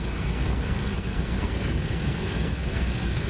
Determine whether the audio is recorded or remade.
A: remade